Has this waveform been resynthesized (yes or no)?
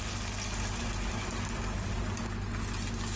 no